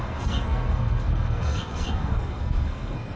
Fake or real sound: fake